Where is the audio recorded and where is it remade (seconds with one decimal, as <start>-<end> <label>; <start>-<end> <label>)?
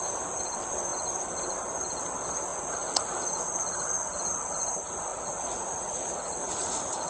0.0-2.5 recorded; 2.5-3.2 remade; 3.2-5.1 recorded; 5.1-7.1 remade